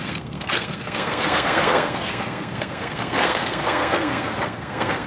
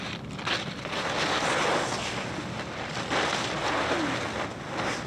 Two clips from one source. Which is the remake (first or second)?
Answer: first